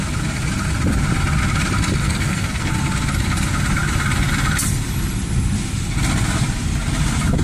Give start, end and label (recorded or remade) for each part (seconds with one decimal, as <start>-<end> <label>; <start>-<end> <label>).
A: 0.0-2.0 recorded; 2.0-2.7 remade; 2.7-7.4 recorded